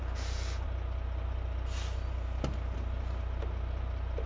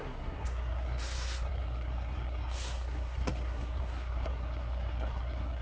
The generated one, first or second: second